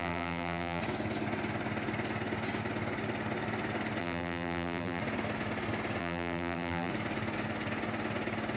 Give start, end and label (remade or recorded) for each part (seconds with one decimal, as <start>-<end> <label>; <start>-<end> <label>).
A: 0.0-0.8 remade; 0.8-4.0 recorded; 4.0-5.0 remade; 5.0-6.0 recorded; 6.0-6.9 remade; 6.9-8.6 recorded